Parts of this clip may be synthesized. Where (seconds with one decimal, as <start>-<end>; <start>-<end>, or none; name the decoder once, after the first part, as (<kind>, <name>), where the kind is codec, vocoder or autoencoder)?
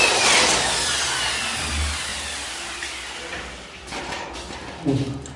2.1-4.3 (vocoder, BigVGAN v2)